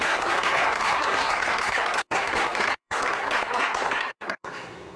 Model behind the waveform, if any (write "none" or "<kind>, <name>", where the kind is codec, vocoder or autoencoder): codec, SNAC